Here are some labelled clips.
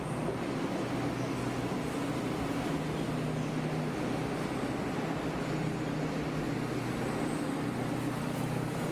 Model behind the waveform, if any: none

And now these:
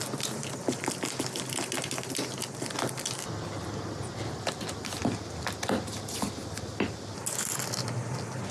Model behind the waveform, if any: none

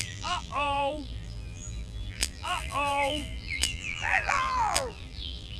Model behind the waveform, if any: vocoder, BigVGAN v2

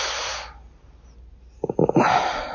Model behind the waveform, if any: none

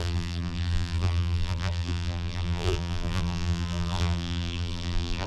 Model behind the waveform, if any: vocoder, BigVGAN v2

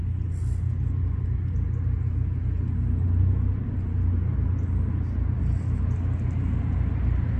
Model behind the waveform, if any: none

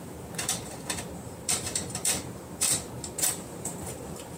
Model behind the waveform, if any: vocoder, BigVGAN v2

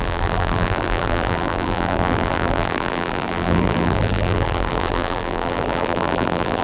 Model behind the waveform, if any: vocoder, BigVGAN v2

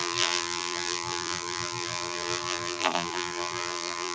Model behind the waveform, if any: vocoder, BigVGAN v2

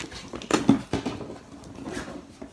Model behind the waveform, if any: none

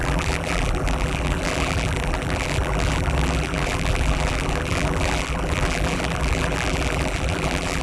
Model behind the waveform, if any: vocoder, BigVGAN v2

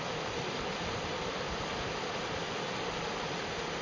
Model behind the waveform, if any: none